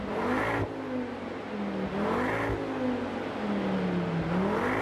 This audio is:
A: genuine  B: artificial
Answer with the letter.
A